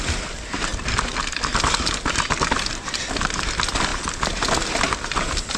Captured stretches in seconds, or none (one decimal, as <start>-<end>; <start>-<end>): 0.0-5.6